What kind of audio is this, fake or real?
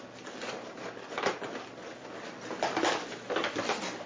real